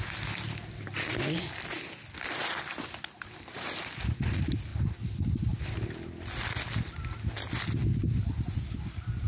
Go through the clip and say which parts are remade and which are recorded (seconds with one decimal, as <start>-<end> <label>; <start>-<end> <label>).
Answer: 0.0-9.3 recorded